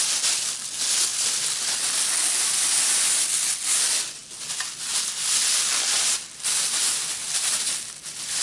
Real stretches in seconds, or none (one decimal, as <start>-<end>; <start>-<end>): 0.0-1.1; 2.0-8.4